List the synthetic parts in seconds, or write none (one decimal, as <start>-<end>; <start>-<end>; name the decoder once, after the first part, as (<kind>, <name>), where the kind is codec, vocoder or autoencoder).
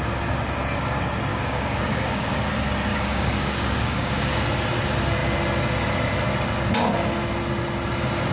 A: 1.3-2.5 (codec, DAC); 2.9-4.4